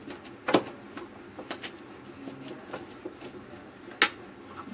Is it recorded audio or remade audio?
recorded